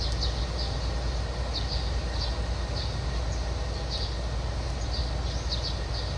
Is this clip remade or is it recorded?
recorded